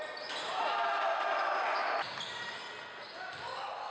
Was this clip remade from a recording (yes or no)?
no